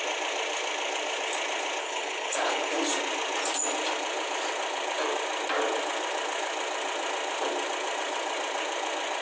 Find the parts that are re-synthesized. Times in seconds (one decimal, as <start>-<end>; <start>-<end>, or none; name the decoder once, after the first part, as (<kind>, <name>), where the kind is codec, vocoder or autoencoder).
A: 1.8-2.7 (codec, HILCodec)